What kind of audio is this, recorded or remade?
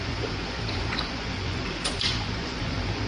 remade